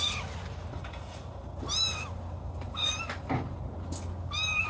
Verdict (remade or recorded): recorded